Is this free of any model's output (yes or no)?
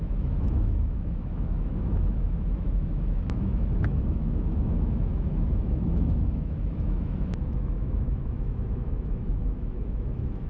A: no